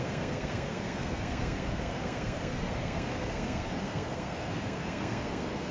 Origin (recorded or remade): remade